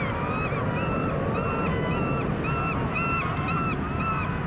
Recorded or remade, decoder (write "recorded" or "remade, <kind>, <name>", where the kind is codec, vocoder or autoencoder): recorded